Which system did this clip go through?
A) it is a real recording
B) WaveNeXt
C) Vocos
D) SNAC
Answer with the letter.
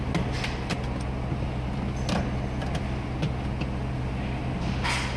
A